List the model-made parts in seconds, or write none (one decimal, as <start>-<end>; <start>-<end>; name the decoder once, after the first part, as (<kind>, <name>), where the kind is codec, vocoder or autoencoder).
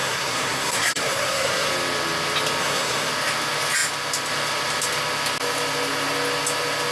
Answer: 0.0-1.7 (codec, SNAC); 2.6-3.1